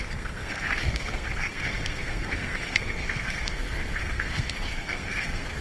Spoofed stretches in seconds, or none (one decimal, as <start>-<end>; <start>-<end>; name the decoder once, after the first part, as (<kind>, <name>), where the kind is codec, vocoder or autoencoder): 0.0-5.6 (codec, SNAC)